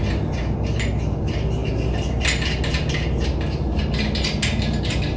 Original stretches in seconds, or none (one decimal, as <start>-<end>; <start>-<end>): 0.0-5.2